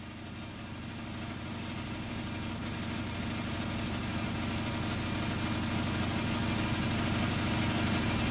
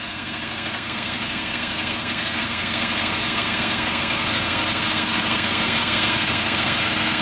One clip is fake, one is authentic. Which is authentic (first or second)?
first